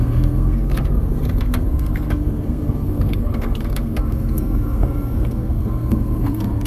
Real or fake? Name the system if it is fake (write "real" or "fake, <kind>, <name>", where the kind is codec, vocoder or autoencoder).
fake, codec, SNAC